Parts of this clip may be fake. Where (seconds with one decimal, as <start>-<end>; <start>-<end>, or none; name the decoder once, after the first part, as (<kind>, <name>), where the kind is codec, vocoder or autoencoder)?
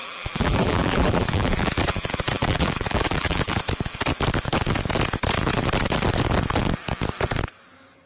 0.0-3.6 (vocoder, BigVGAN v2)